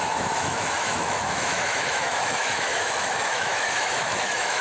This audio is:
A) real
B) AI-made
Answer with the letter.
B